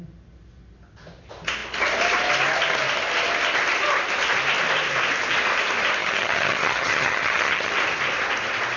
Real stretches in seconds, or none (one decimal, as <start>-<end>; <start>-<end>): 0.0-6.0; 7.7-8.8